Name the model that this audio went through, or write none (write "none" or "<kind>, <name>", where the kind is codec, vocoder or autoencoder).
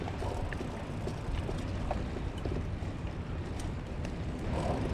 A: vocoder, BigVGAN v2